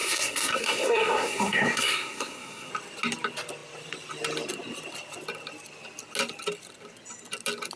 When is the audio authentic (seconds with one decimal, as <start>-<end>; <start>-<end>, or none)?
2.7-7.8